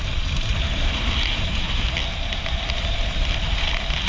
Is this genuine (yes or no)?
yes